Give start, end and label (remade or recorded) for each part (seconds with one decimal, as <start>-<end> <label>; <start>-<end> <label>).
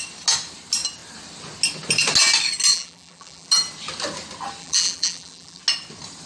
0.0-2.7 recorded; 2.7-3.5 remade; 3.5-4.6 recorded; 4.6-5.6 remade; 5.6-6.3 recorded